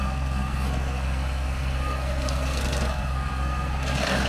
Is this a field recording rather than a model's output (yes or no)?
no